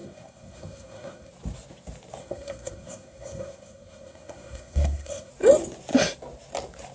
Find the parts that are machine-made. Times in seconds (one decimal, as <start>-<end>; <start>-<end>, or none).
0.0-1.3; 2.2-5.3